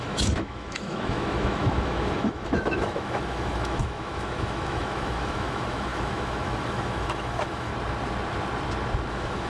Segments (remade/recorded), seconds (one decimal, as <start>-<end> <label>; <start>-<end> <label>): 0.0-7.7 remade; 7.7-9.1 recorded; 9.1-9.5 remade